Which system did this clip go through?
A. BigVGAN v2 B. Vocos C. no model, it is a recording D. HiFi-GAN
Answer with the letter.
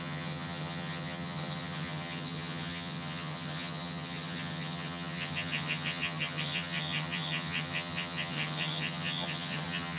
D